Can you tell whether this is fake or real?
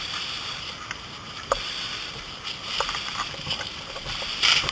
fake